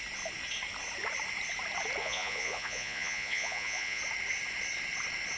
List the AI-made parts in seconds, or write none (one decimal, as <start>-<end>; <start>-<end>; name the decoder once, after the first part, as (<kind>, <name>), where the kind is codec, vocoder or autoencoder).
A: 2.0-4.0 (vocoder, Vocos)